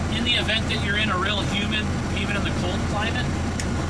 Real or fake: real